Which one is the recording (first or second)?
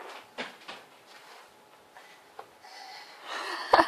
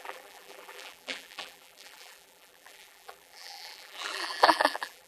first